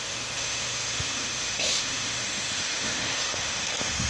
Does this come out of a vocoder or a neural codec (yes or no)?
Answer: yes